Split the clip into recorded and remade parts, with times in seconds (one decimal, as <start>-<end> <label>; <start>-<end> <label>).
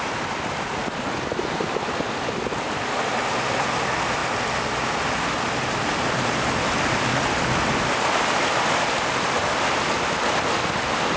0.0-11.2 remade